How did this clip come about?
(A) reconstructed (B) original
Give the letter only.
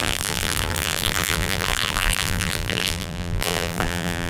A